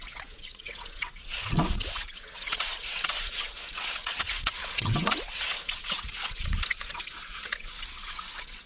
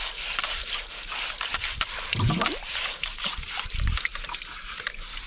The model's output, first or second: first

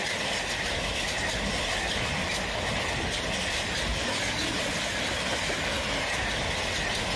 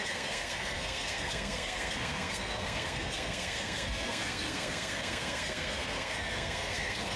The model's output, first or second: second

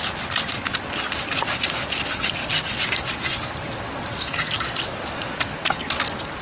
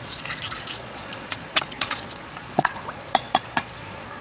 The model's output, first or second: second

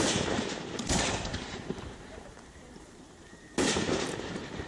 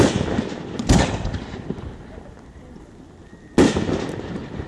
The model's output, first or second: first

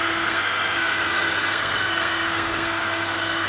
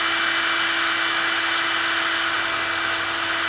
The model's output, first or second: first